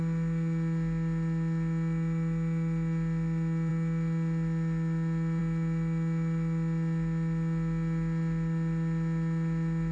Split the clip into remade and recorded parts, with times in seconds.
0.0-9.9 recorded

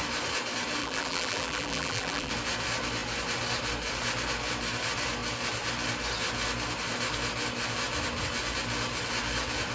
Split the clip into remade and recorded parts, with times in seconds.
0.0-0.8 recorded; 0.8-2.3 remade; 2.3-9.7 recorded

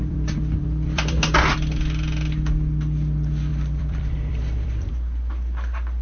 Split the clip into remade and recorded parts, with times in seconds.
0.0-1.3 remade; 1.3-3.5 recorded; 3.5-4.9 remade; 4.9-6.0 recorded

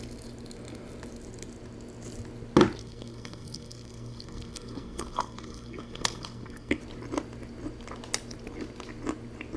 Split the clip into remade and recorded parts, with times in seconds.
0.0-2.8 recorded; 2.8-6.8 remade; 6.8-9.6 recorded

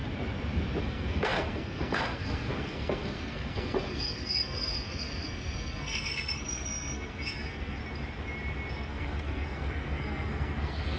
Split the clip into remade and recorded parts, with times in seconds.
0.0-0.8 recorded; 0.8-7.8 remade; 7.8-8.7 recorded; 8.7-11.0 remade

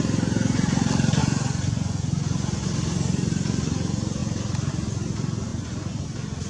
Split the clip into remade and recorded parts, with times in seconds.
0.0-1.2 recorded; 1.2-2.7 remade; 2.7-5.5 recorded; 5.5-6.0 remade; 6.0-6.5 recorded

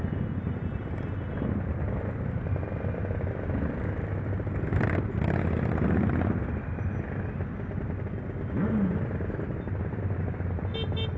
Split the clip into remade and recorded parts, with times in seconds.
0.0-11.2 recorded